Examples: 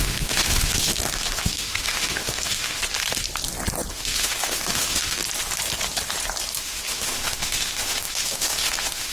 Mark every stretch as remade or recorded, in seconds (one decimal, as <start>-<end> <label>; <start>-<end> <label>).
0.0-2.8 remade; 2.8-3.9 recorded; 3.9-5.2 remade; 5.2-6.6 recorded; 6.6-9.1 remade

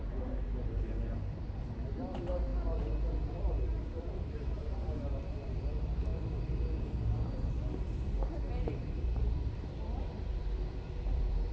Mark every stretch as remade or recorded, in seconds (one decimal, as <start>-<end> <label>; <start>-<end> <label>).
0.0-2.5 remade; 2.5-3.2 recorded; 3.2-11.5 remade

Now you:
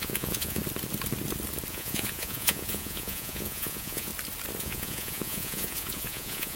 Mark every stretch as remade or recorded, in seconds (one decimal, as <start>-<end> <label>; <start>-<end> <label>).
0.0-0.6 remade; 0.6-1.7 recorded; 1.7-4.1 remade; 4.1-4.6 recorded; 4.6-6.6 remade

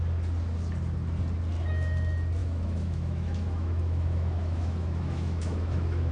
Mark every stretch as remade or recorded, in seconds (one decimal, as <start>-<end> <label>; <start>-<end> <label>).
0.0-2.4 recorded; 2.4-6.1 remade

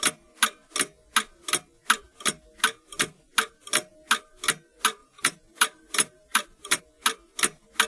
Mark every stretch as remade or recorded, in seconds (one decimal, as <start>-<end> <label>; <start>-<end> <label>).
0.0-5.0 recorded; 5.0-6.8 remade; 6.8-7.9 recorded

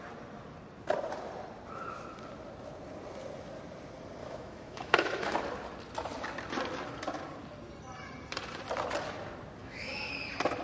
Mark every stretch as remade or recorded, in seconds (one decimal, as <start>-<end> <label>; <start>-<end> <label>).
0.0-4.2 recorded; 4.2-5.4 remade; 5.4-9.6 recorded; 9.6-10.1 remade; 10.1-10.6 recorded

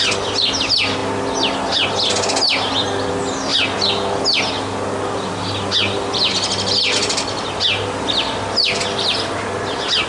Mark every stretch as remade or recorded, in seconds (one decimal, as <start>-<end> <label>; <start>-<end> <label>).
0.0-10.1 recorded

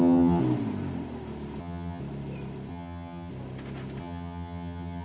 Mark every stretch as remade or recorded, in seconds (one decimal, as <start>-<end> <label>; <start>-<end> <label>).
0.0-0.4 remade; 0.4-1.6 recorded; 1.6-2.0 remade; 2.0-2.7 recorded; 2.7-3.3 remade; 3.3-4.0 recorded; 4.0-5.0 remade